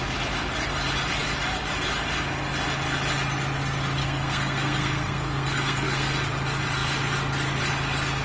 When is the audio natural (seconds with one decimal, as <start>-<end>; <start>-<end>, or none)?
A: 0.0-4.0; 6.1-8.2